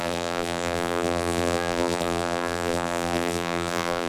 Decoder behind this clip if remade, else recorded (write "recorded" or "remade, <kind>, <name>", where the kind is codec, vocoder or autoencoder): remade, vocoder, BigVGAN v2